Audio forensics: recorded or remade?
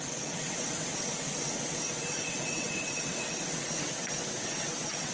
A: remade